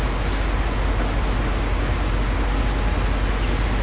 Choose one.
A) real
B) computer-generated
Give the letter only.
A